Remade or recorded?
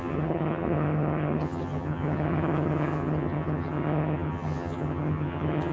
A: remade